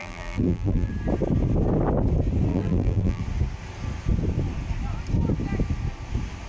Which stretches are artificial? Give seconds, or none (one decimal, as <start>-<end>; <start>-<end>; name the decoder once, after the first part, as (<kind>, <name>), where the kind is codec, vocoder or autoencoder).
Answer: 0.0-0.9 (vocoder, BigVGAN v2); 2.5-3.2